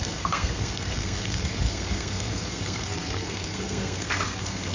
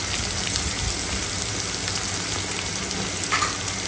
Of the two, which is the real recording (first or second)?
second